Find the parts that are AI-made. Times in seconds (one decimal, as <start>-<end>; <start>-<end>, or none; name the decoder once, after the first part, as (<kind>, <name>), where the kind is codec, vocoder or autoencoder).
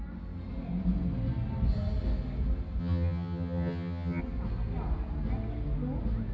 2.8-4.2 (vocoder, HiFi-GAN)